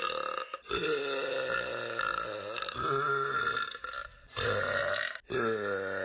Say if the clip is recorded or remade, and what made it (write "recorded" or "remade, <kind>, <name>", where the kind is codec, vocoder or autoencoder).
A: recorded